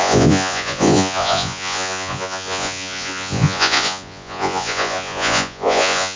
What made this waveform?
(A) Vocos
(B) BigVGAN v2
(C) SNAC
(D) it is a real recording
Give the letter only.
A